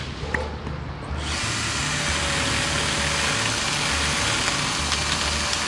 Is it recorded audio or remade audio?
recorded